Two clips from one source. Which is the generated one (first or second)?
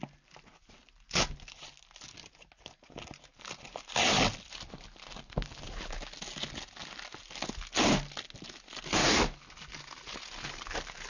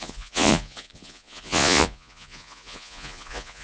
second